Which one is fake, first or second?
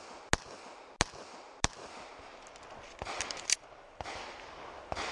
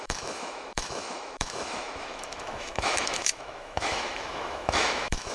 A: second